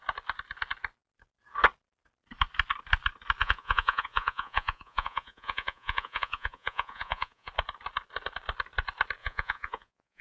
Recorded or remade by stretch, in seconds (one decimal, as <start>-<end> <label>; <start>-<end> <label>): 0.0-3.4 recorded; 3.4-7.5 remade; 7.5-9.2 recorded; 9.2-10.2 remade